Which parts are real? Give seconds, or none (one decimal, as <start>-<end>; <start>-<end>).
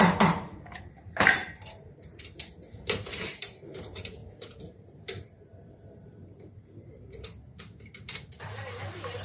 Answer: none